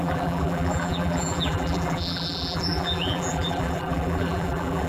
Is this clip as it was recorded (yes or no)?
no